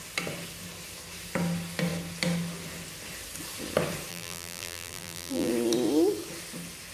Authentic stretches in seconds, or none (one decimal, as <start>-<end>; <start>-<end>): 0.0-4.1; 5.5-6.9